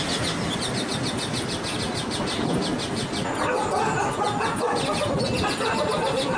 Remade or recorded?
recorded